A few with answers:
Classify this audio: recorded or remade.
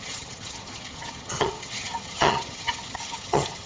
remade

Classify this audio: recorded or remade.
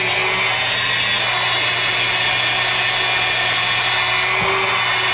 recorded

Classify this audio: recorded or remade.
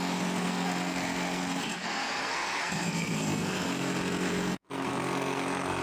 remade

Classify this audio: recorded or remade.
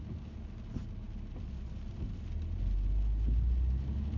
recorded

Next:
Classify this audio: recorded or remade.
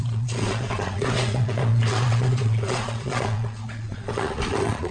remade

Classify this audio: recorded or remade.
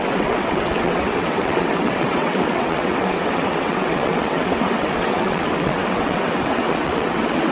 remade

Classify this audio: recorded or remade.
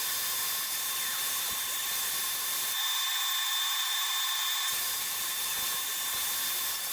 remade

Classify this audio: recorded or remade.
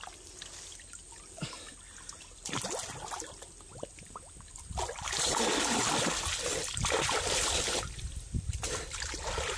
recorded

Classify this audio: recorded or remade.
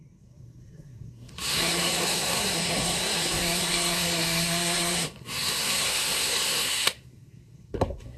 remade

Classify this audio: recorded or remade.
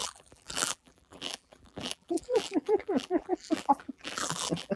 remade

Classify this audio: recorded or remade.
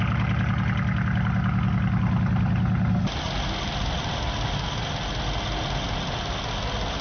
recorded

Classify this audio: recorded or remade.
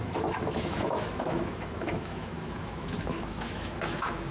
remade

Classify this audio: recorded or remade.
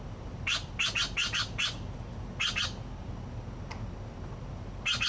recorded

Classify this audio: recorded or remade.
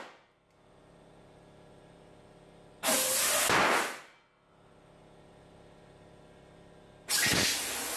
recorded